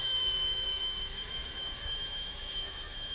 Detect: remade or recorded remade